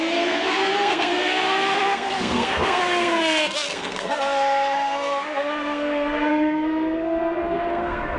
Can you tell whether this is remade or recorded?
remade